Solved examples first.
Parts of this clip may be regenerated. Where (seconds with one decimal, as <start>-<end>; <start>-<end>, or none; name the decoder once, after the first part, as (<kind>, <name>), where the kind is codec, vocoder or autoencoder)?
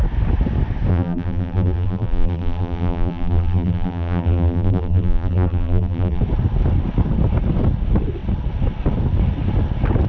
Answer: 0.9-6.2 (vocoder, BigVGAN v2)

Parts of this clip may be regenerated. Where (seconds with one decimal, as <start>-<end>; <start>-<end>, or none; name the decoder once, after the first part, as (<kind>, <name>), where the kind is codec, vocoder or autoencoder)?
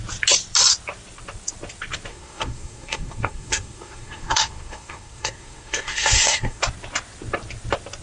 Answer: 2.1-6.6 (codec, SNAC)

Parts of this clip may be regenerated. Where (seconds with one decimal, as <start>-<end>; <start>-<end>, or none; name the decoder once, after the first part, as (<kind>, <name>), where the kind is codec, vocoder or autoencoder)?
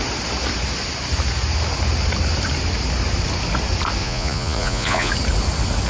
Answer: 4.0-5.1 (vocoder, Vocos)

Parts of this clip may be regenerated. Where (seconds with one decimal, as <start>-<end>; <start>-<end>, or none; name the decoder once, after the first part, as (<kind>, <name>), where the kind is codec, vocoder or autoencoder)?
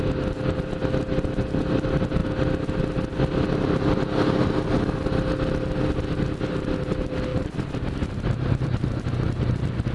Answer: 7.3-8.9 (vocoder, BigVGAN v2)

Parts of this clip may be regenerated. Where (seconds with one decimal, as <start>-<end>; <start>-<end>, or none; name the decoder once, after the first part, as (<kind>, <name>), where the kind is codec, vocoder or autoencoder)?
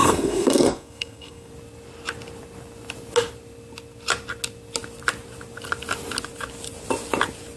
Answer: 0.0-1.5 (codec, SNAC)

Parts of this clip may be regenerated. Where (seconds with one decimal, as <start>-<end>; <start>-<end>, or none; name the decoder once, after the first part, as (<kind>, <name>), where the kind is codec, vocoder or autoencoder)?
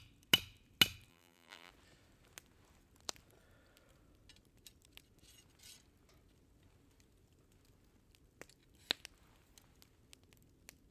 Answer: 1.1-1.7 (vocoder, BigVGAN v2)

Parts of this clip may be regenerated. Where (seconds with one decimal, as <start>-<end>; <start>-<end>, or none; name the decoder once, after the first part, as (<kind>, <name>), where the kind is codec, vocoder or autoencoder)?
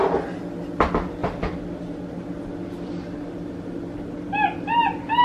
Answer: 1.2-4.3 (vocoder, BigVGAN v2)